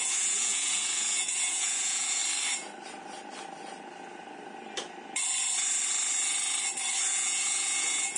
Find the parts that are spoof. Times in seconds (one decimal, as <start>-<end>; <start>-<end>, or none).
0.0-2.2; 7.1-8.2